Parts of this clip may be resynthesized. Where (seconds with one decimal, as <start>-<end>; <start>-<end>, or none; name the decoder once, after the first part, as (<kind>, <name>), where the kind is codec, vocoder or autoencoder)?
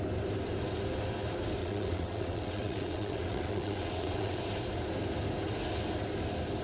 1.6-4.4 (vocoder, WaveNeXt)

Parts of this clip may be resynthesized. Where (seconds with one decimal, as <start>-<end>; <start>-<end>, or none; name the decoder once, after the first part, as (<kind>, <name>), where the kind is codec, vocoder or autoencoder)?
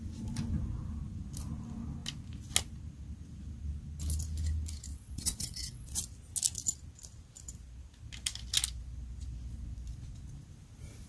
4.9-6.0 (vocoder, WaveNeXt)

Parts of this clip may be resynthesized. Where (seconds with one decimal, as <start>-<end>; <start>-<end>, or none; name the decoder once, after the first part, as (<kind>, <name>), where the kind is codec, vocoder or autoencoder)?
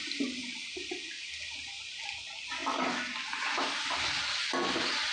none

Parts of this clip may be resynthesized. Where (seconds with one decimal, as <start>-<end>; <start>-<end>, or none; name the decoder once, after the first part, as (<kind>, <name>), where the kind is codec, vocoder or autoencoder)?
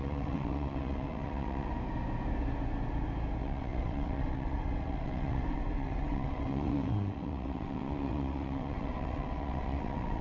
0.0-1.7 (vocoder, WaveNeXt); 3.4-10.2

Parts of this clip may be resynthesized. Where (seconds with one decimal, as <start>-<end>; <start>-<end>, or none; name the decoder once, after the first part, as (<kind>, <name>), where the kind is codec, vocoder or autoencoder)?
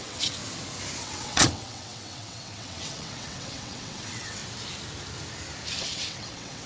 0.0-0.4 (vocoder, WaveNeXt); 1.0-4.4; 5.8-6.7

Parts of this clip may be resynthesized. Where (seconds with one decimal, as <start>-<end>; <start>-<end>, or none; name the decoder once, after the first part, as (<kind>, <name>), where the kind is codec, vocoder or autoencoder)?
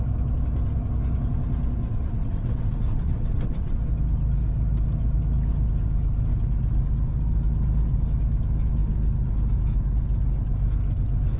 1.9-3.8 (vocoder, WaveNeXt)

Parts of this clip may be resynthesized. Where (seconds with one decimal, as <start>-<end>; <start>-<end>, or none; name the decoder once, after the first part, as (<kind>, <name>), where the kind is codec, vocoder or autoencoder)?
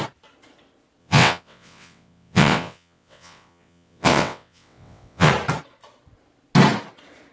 1.0-5.3 (vocoder, WaveNeXt)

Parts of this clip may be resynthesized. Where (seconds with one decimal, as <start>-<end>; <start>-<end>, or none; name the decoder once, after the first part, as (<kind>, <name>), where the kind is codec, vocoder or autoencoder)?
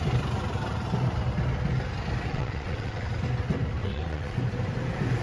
2.3-3.1 (vocoder, WaveNeXt); 3.8-4.4